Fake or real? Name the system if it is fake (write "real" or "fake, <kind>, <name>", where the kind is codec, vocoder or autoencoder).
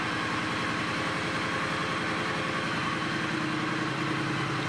real